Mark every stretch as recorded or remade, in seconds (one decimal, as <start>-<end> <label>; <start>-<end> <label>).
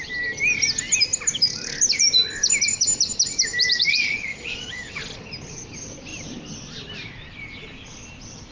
0.0-3.9 recorded; 3.9-5.0 remade; 5.0-8.5 recorded